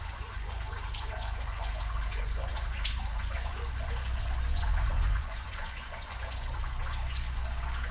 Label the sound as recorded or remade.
remade